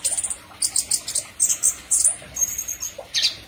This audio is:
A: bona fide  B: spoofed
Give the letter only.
A